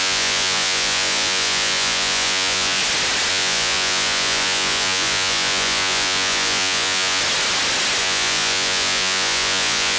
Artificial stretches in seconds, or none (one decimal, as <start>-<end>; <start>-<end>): 0.0-2.8; 3.3-7.2; 8.0-10.0